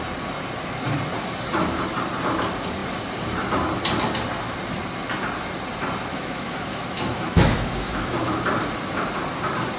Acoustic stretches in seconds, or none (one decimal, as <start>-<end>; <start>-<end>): 0.0-6.1; 8.4-9.8